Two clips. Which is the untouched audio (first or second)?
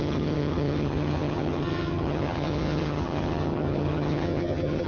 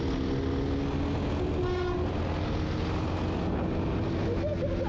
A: second